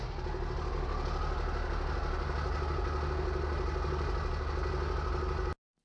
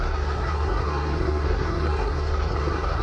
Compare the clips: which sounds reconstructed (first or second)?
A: second